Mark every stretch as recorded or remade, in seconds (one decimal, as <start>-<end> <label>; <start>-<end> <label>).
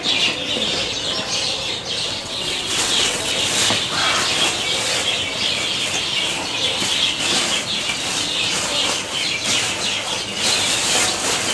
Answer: 0.0-2.2 recorded; 2.2-3.4 remade; 3.4-11.5 recorded